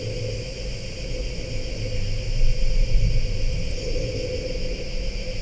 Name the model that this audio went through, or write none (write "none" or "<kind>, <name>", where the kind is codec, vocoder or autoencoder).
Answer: none